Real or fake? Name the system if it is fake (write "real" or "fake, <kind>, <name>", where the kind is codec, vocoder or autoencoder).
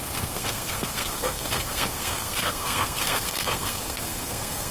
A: fake, codec, SNAC